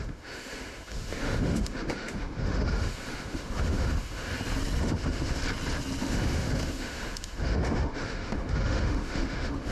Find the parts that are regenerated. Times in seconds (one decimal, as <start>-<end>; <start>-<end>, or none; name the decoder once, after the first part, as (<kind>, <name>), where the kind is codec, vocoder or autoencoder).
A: 0.0-4.3 (autoencoder, DAC-VAE); 4.8-5.4; 6.0-9.7